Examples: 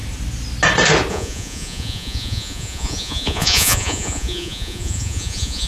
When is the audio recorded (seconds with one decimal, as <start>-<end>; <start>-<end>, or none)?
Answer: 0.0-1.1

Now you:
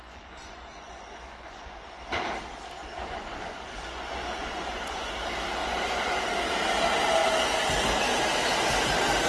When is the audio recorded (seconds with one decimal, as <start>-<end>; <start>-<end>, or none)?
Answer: 2.0-2.8; 5.1-5.6; 6.2-9.3

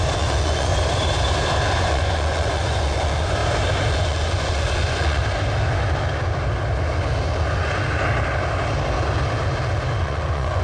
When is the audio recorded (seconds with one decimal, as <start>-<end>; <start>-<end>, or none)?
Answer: 0.7-1.8; 3.4-3.9; 5.2-10.0

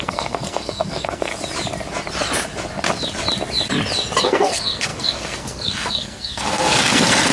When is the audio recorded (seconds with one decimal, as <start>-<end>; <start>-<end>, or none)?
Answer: 1.3-4.2

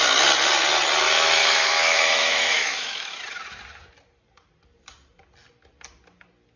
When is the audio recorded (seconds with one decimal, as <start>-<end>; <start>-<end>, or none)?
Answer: 0.0-1.4; 3.2-6.6